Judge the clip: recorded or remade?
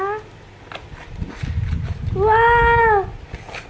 recorded